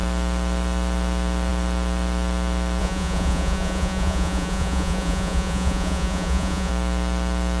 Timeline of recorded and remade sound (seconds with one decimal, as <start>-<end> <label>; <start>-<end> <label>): 0.0-2.8 recorded; 2.8-6.7 remade; 6.7-7.6 recorded